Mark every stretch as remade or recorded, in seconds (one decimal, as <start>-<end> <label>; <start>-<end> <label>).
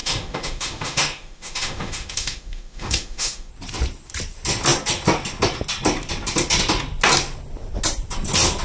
0.0-3.5 remade; 3.5-8.6 recorded